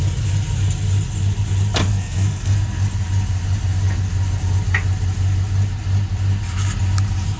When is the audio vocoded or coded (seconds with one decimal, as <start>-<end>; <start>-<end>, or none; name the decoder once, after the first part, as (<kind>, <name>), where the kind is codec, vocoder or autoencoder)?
1.9-2.8 (codec, SNAC)